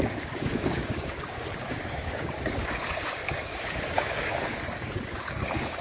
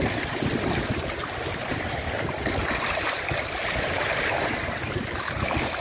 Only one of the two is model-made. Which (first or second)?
first